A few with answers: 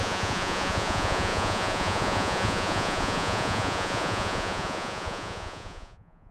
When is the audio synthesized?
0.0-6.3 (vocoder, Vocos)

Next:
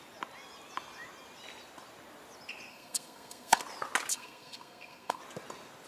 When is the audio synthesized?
2.7-3.6 (codec, SNAC); 4.1-5.2

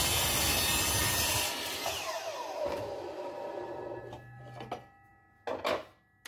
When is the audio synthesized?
1.9-4.4 (vocoder, BigVGAN v2)

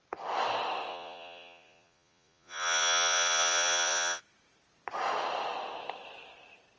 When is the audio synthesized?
0.9-4.2 (vocoder, Vocos)

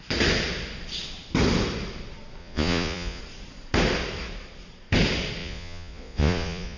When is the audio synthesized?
2.4-3.2 (vocoder, Vocos); 5.4-6.8

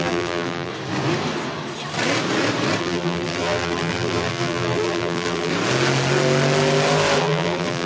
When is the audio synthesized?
0.0-0.7 (vocoder, BigVGAN v2); 2.8-5.5; 7.2-7.9